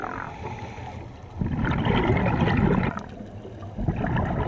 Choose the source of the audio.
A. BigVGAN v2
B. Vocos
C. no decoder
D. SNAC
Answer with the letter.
C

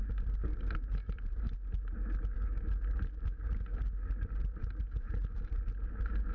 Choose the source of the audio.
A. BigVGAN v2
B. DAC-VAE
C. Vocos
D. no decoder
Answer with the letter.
D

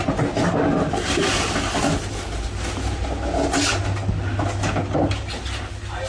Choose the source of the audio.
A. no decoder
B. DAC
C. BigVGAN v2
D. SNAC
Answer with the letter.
A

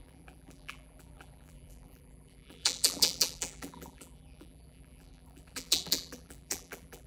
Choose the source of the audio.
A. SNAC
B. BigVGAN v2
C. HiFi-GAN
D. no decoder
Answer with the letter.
B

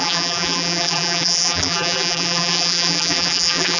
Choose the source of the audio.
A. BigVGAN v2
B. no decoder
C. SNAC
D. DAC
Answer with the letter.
A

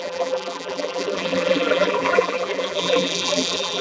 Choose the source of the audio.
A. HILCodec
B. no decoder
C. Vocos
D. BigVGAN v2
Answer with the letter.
D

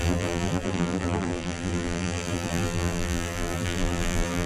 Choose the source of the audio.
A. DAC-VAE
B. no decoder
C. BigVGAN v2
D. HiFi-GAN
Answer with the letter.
C